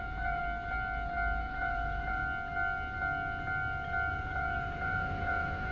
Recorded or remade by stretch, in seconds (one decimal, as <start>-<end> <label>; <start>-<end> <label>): 0.0-0.4 remade; 0.4-1.4 recorded; 1.4-2.2 remade; 2.2-4.1 recorded; 4.1-5.7 remade